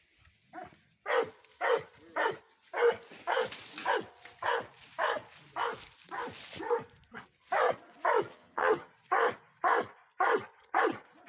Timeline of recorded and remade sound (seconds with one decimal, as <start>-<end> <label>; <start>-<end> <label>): 0.0-8.3 recorded; 8.3-8.9 remade; 8.9-11.3 recorded